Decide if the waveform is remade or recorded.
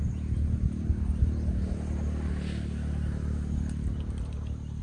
recorded